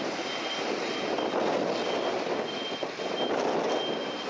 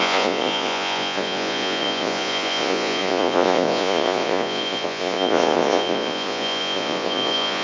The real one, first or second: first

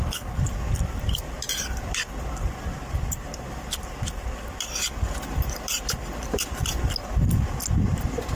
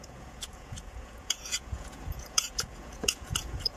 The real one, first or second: first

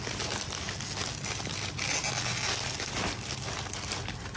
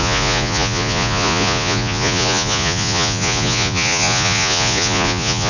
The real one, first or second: first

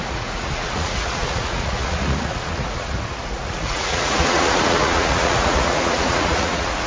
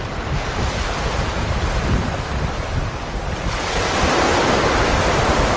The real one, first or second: second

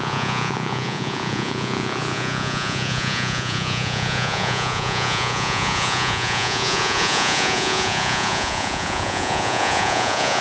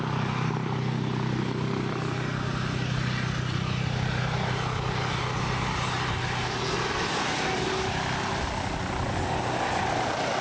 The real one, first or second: second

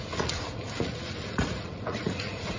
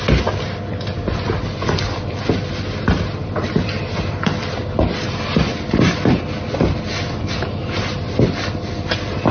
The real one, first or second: second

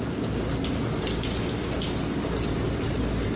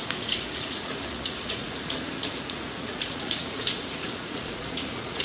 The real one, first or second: first